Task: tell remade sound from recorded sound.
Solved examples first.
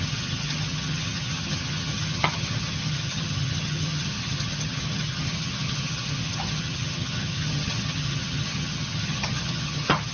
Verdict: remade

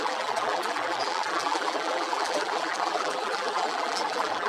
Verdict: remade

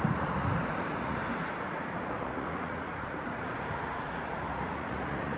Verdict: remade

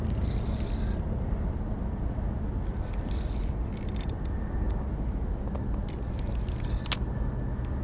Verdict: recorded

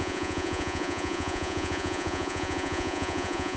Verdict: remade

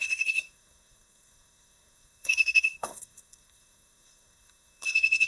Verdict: remade